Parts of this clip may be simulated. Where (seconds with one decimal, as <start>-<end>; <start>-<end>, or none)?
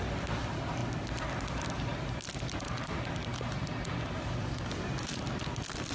none